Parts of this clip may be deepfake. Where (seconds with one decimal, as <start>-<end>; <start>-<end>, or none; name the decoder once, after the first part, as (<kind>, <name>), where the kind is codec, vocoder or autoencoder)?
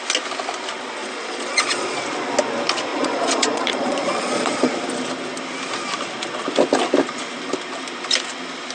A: 1.0-2.0 (vocoder, Vocos); 2.9-4.7